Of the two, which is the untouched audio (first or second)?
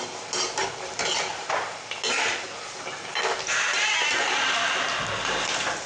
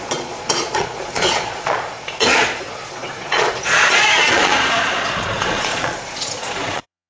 first